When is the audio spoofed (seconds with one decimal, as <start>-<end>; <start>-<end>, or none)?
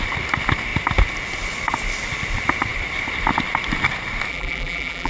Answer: 4.3-5.1